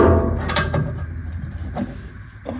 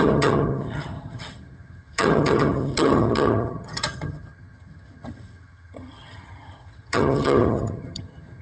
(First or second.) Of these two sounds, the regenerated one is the second